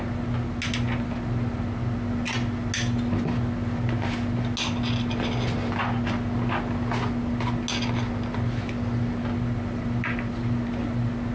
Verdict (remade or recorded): recorded